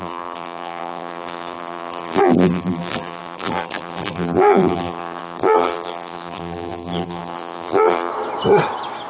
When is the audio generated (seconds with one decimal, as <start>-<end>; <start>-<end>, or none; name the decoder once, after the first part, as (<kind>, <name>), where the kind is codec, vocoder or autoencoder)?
0.0-8.1 (vocoder, BigVGAN v2)